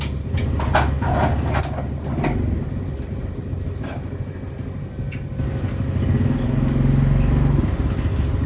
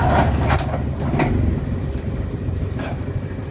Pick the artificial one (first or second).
second